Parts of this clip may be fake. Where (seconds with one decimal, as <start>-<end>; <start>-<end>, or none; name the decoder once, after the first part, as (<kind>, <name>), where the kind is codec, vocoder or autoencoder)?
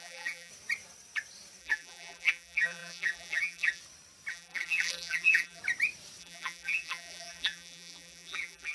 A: 0.0-0.5 (vocoder, BigVGAN v2); 1.6-3.8; 4.3-5.6; 6.2-8.7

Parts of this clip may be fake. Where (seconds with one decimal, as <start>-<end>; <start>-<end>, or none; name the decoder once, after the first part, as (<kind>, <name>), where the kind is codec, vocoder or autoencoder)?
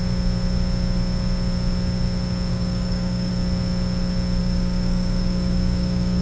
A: 2.5-3.3 (codec, DAC); 4.4-6.2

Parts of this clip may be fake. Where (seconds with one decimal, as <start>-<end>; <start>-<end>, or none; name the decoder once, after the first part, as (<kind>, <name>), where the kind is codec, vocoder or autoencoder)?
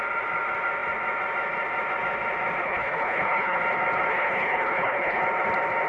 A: 2.6-3.6 (codec, HILCodec); 4.1-5.2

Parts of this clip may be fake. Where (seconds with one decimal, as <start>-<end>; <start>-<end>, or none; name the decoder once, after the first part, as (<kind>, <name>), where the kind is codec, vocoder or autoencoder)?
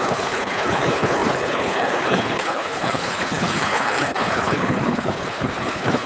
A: 0.0-6.1 (codec, HILCodec)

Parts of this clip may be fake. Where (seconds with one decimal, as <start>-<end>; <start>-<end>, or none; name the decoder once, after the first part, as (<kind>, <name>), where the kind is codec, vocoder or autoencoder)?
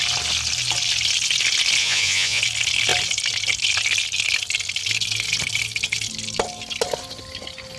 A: 1.8-2.4 (vocoder, Vocos)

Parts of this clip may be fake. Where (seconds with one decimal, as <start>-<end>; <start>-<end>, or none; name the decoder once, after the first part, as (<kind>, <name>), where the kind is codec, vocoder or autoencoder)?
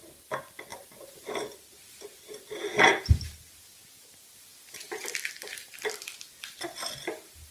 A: 0.7-1.3 (vocoder, BigVGAN v2)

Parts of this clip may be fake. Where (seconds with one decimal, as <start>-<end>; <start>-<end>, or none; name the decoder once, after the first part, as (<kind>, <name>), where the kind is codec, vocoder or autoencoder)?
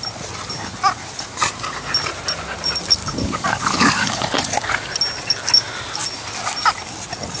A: 3.0-4.9 (codec, DAC)